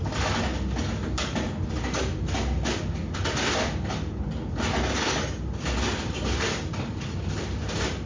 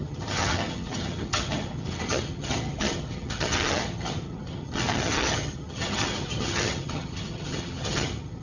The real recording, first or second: first